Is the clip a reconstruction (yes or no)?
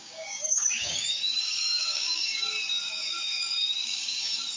yes